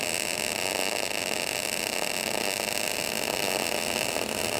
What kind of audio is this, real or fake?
real